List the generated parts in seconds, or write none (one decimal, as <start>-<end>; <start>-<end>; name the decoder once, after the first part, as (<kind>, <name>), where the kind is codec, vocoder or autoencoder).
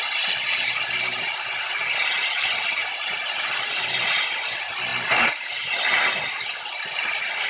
none